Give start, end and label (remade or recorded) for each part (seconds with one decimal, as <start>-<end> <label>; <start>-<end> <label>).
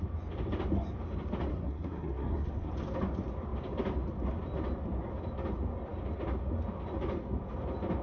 0.0-1.5 recorded; 1.5-2.7 remade; 2.7-8.0 recorded